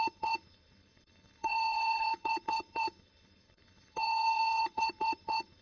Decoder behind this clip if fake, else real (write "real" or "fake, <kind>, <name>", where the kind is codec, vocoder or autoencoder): fake, codec, HILCodec